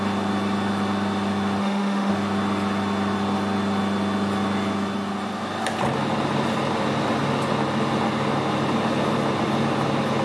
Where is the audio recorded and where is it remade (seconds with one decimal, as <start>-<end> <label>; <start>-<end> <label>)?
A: 0.0-1.6 recorded; 1.6-2.1 remade; 2.1-10.2 recorded